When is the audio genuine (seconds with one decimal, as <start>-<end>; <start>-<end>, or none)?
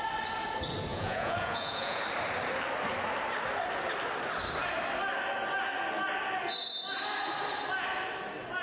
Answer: 0.0-0.9; 2.0-8.6